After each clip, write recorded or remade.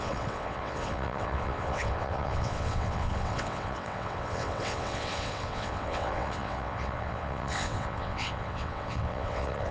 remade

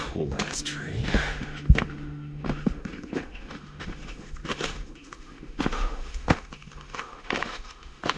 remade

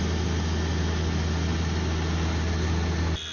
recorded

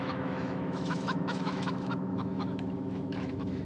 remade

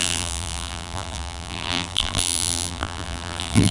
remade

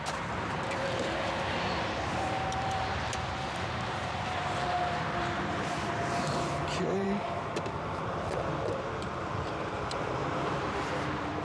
remade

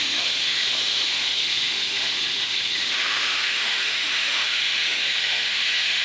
remade